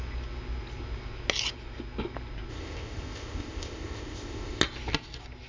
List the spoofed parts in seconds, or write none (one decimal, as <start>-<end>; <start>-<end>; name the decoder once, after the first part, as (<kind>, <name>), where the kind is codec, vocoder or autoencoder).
2.5-4.6 (codec, ZipCodec)